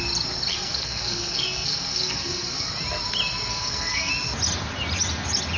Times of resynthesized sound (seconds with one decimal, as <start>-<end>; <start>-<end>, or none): 0.5-2.7; 3.5-4.1